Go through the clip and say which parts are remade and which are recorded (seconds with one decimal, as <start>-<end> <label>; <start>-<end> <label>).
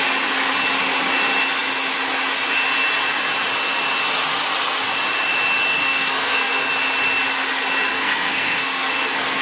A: 0.0-5.7 recorded; 5.7-6.7 remade; 6.7-7.9 recorded; 7.9-9.4 remade